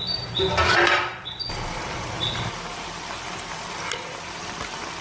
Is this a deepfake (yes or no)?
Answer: no